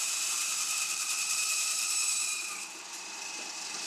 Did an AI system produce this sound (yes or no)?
yes